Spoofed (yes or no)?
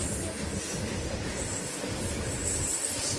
no